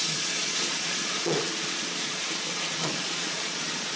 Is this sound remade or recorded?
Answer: remade